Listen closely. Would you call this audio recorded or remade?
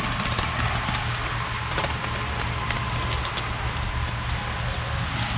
recorded